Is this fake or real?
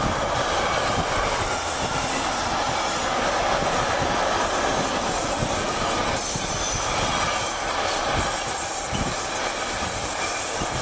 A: real